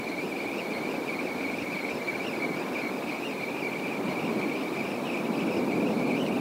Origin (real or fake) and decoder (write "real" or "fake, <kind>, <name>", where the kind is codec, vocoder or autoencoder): real